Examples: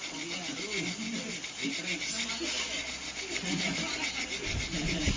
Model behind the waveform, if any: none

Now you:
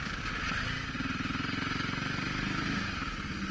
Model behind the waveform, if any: none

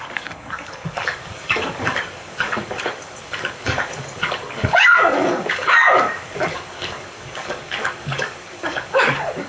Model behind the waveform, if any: codec, DAC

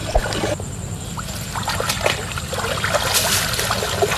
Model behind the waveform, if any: none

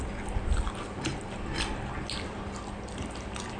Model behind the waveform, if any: none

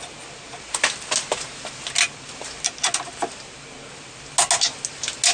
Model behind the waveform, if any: none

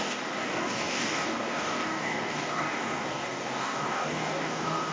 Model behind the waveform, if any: codec, DAC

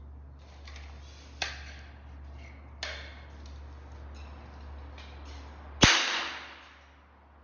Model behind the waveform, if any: none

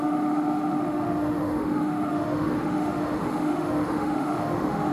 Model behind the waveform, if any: autoencoder, DAC-VAE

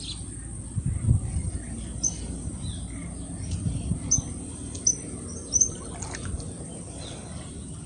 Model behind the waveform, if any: none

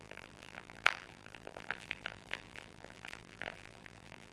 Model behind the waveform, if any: vocoder, BigVGAN v2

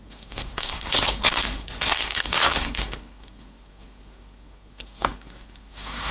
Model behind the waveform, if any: codec, SNAC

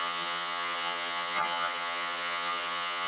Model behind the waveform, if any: vocoder, HiFi-GAN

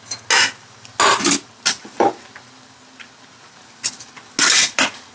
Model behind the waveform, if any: none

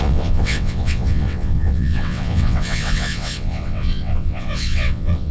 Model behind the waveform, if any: vocoder, WaveNeXt